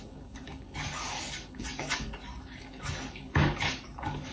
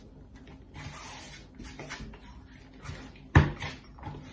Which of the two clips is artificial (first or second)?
first